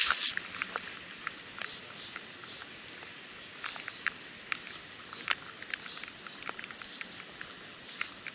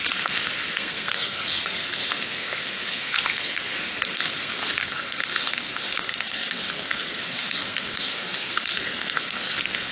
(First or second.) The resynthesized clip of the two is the second